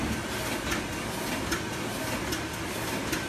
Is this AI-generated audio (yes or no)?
no